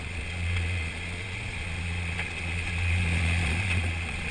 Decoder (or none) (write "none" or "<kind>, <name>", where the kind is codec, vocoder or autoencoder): vocoder, Vocos